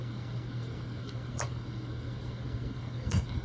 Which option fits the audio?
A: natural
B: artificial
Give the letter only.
B